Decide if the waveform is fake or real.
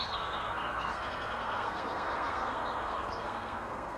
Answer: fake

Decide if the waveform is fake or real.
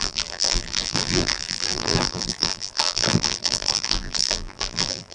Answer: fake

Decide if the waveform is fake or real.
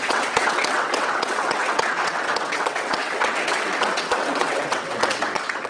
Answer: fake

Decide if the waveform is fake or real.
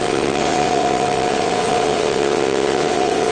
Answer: fake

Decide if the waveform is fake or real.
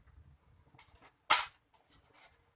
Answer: real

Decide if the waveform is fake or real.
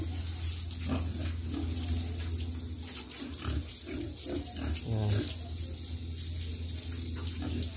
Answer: real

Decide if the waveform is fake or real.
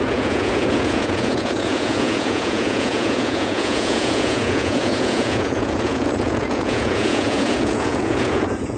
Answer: fake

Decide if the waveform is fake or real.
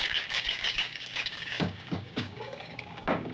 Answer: fake